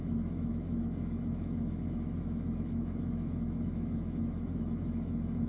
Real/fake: fake